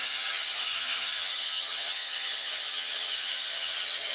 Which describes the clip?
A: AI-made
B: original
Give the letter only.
A